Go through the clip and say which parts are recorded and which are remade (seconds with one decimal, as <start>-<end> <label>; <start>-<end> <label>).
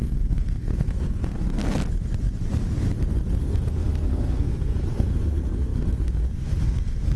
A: 0.0-1.6 remade; 1.6-3.4 recorded; 3.4-7.2 remade